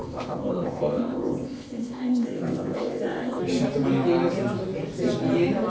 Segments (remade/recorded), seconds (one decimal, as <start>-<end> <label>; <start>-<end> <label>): 0.0-3.4 remade; 3.4-5.7 recorded